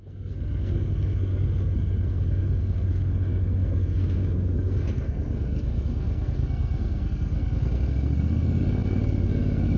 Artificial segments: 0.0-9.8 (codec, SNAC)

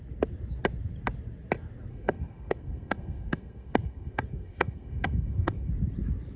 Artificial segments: 1.9-5.7 (codec, SNAC)

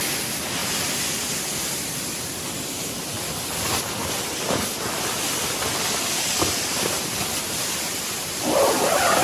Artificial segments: none